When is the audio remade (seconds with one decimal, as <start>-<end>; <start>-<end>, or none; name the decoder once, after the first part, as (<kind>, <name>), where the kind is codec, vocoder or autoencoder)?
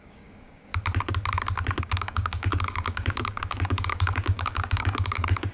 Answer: 0.0-0.7 (codec, DAC); 1.8-5.5